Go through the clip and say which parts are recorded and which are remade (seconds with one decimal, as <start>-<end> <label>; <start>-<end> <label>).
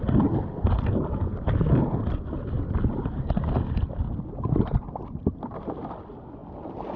0.0-7.0 recorded